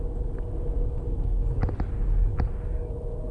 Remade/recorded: recorded